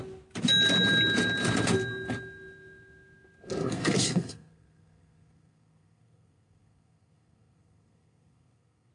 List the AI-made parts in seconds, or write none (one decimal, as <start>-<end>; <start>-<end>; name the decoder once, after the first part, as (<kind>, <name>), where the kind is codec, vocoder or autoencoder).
3.6-8.9 (codec, SNAC)